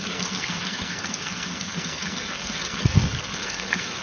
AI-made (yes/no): yes